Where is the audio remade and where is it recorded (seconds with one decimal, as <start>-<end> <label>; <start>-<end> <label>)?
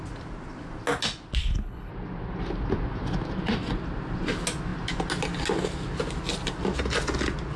0.0-1.4 recorded; 1.4-1.9 remade; 1.9-7.6 recorded